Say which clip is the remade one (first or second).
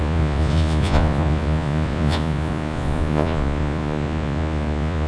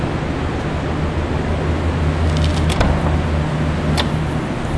first